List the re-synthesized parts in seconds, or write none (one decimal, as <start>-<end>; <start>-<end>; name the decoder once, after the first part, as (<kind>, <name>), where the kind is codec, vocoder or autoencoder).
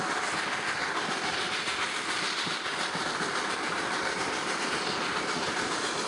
none